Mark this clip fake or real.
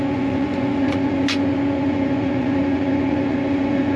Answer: fake